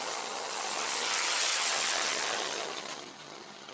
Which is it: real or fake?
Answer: fake